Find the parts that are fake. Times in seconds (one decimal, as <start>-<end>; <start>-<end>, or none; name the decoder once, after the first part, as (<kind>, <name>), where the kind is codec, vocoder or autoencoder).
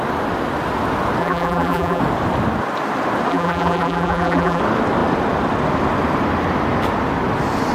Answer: 1.2-2.0 (vocoder, BigVGAN v2); 3.3-4.6